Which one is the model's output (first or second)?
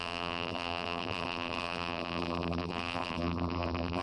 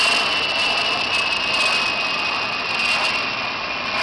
first